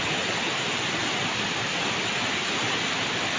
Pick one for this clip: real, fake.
real